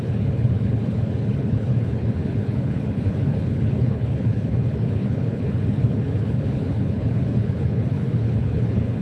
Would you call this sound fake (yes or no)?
yes